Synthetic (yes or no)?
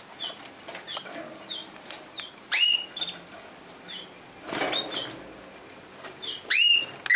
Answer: no